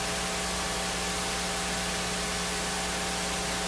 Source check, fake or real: real